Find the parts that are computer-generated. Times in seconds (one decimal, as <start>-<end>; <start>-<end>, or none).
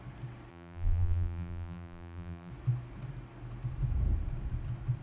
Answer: 0.5-2.5